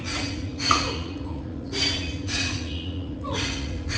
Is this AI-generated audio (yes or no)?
yes